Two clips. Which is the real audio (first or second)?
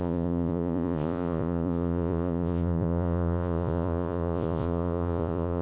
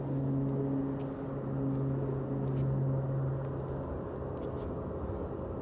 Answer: second